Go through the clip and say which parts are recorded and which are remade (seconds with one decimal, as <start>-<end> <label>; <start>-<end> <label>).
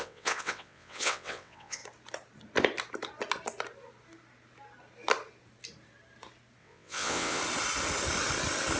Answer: 0.0-1.8 remade; 1.8-6.6 recorded; 6.6-7.4 remade; 7.4-8.8 recorded